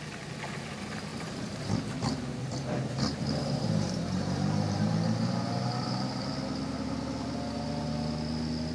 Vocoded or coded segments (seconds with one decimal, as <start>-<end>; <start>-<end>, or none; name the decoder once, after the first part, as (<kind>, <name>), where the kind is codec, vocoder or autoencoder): 1.1-1.7 (vocoder, BigVGAN v2); 2.4-6.3